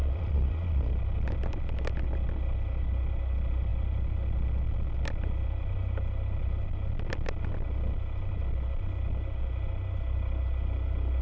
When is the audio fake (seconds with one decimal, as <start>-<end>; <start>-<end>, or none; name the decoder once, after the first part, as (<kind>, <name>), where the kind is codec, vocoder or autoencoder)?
0.0-0.9 (vocoder, Vocos)